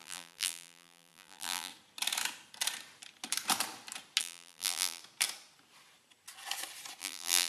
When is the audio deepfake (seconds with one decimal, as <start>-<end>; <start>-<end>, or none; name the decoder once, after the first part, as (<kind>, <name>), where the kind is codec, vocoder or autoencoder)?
0.0-1.7 (vocoder, BigVGAN v2); 4.2-5.0; 7.0-7.5